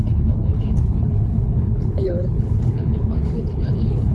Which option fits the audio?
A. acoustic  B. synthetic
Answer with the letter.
B